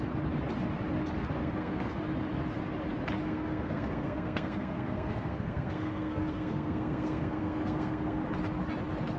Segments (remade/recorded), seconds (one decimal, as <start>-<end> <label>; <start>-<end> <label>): 0.0-1.4 recorded; 1.4-2.0 remade; 2.0-3.2 recorded; 3.2-8.2 remade; 8.2-9.2 recorded